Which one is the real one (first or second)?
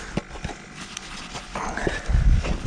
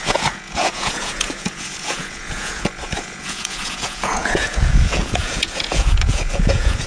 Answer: first